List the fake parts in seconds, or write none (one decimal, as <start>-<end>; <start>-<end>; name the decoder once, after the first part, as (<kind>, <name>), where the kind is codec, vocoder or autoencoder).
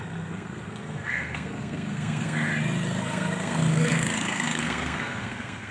0.0-2.5 (codec, SNAC); 3.0-5.7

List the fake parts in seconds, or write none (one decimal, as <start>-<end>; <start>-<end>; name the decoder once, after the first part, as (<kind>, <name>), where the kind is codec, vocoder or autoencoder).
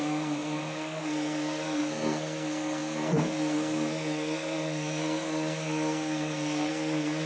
0.0-7.3 (codec, SNAC)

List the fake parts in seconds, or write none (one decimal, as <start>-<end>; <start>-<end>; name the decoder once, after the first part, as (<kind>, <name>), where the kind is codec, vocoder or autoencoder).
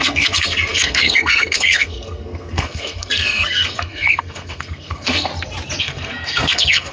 0.0-5.3 (codec, SNAC); 5.8-6.9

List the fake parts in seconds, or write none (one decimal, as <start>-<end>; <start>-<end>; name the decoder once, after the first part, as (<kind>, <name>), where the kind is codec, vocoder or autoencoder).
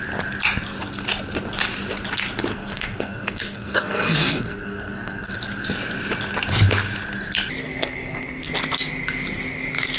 2.5-5.3 (codec, SNAC); 7.6-8.5